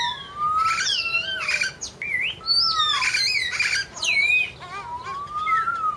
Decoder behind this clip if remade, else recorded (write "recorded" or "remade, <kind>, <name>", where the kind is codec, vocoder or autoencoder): recorded